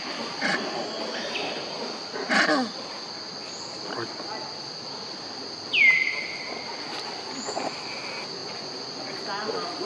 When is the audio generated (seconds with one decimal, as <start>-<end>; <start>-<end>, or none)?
8.4-9.0